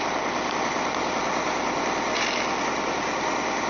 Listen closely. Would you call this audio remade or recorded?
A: recorded